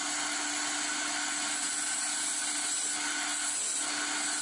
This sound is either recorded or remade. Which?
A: recorded